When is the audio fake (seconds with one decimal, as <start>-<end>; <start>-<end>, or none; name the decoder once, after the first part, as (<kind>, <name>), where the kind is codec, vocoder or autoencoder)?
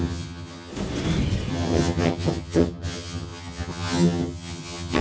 0.0-0.7 (vocoder, HiFi-GAN); 1.5-5.0